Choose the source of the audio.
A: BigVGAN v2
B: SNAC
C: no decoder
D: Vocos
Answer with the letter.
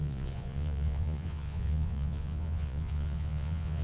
D